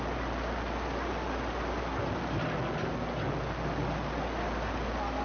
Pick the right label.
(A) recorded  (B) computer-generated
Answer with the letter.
A